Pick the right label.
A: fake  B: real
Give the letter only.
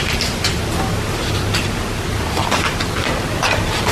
B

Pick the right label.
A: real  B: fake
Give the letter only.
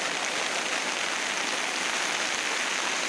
A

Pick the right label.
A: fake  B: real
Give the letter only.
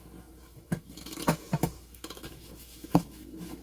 A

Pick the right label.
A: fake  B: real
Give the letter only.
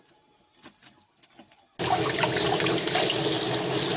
B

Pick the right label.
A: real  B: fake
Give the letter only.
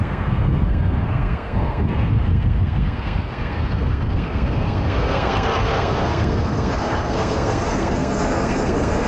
B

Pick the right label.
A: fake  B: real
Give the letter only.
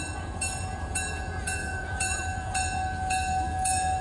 A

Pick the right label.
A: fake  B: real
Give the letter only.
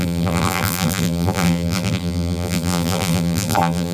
A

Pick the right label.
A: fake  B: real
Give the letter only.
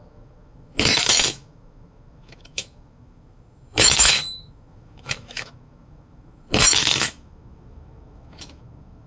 A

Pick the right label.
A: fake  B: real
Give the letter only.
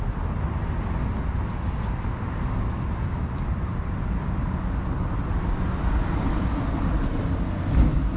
B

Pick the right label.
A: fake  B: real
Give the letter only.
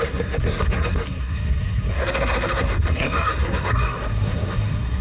A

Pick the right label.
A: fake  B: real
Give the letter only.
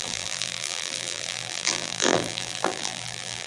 A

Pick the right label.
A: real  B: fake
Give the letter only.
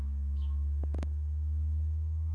B